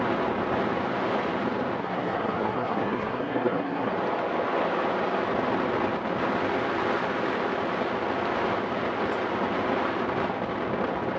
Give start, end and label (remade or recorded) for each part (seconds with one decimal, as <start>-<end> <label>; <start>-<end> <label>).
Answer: 0.0-1.8 recorded; 1.8-3.9 remade; 3.9-11.2 recorded